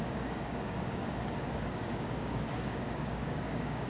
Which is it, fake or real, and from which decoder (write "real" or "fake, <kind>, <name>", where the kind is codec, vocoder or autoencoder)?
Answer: fake, codec, DAC